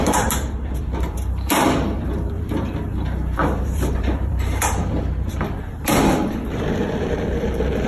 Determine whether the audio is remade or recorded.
remade